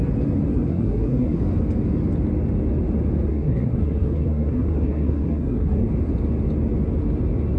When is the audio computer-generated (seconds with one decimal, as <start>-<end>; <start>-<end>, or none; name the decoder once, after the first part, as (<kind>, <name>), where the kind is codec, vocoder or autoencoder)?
0.5-1.4 (codec, SNAC); 3.3-5.9

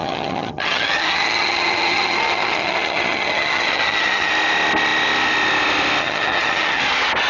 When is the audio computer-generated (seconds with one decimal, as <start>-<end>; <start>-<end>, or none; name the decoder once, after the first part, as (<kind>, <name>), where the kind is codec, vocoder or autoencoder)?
0.0-4.3 (vocoder, HiFi-GAN); 6.0-6.8